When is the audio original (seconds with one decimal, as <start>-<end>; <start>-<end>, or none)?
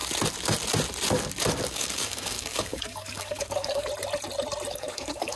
0.0-1.7; 3.9-4.7